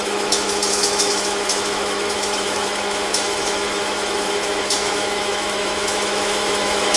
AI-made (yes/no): yes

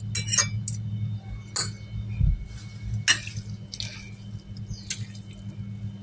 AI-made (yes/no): no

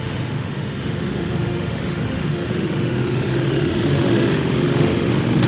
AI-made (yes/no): yes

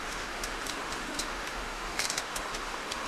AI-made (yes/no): yes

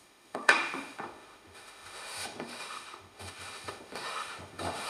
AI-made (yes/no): yes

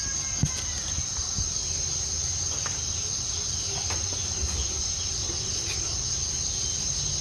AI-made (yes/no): no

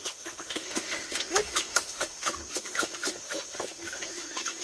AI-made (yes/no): yes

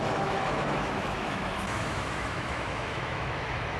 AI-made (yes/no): yes